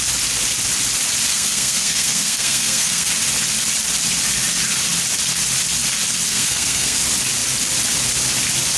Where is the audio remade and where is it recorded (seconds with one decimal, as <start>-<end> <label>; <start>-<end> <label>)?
0.0-1.3 recorded; 1.3-3.1 remade; 3.1-6.3 recorded; 6.3-7.0 remade; 7.0-8.8 recorded